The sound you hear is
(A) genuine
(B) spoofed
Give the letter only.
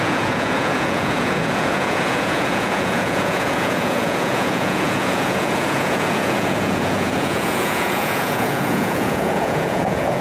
B